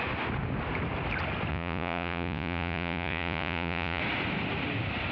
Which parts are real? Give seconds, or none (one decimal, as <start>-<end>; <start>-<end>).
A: 0.0-1.5; 4.0-5.1